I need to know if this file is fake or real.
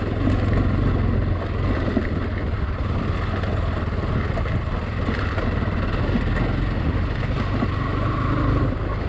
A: real